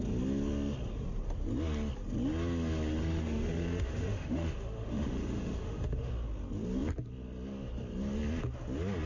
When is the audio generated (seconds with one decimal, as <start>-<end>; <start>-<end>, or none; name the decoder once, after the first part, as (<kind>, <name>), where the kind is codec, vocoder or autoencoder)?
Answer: 3.0-6.1 (autoencoder, DAC-VAE)

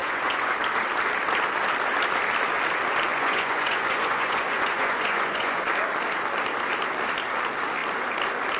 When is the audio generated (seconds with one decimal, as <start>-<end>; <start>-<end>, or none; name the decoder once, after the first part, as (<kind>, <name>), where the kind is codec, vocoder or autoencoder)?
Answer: 0.0-0.5 (vocoder, Vocos); 3.1-5.6

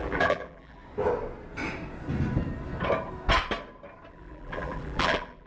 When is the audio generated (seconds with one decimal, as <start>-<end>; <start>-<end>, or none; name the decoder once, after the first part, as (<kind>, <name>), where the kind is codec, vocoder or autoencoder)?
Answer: 0.0-0.8 (vocoder, BigVGAN v2); 4.1-5.5

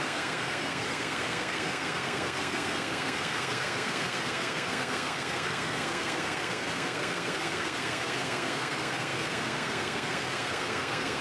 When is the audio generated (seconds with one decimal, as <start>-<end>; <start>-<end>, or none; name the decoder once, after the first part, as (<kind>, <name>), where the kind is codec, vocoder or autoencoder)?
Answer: 0.0-11.2 (codec, SNAC)